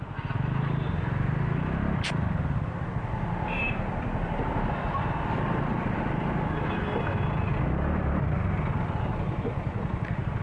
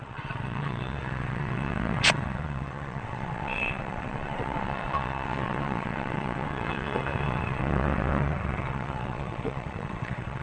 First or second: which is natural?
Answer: first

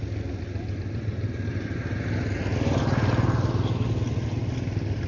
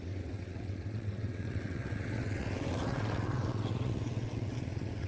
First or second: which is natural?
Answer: first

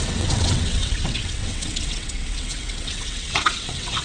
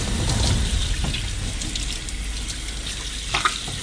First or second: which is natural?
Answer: second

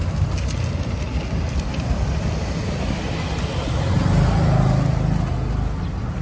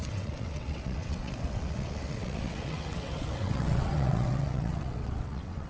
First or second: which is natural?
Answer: first